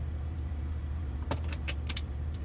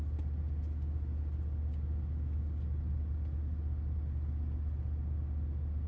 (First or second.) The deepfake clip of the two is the first